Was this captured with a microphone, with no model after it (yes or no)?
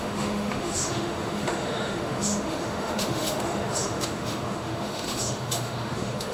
no